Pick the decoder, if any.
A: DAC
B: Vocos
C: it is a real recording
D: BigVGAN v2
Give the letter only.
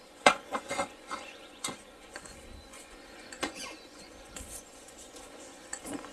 B